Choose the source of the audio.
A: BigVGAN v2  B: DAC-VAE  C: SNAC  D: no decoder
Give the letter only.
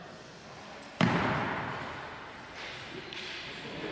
D